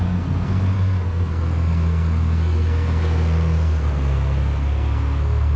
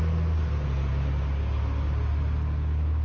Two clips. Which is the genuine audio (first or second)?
second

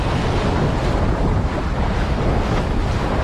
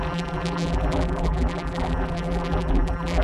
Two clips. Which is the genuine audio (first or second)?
first